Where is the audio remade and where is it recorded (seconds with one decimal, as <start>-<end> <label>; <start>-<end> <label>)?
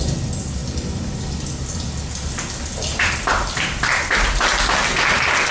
0.0-2.9 recorded; 2.9-4.1 remade; 4.1-5.5 recorded